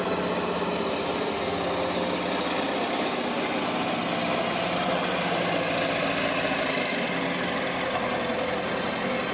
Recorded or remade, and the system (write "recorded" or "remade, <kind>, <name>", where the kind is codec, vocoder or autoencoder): recorded